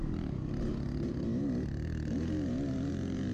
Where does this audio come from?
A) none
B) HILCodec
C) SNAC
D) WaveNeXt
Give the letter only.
A